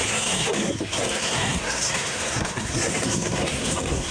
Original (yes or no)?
no